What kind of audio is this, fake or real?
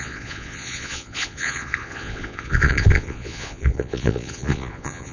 fake